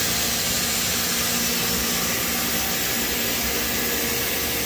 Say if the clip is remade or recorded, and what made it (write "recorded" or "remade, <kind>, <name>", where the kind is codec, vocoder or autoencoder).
recorded